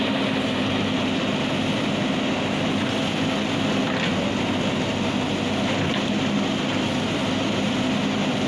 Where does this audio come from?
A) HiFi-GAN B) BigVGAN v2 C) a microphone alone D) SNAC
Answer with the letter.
C